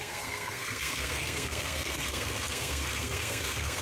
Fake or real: fake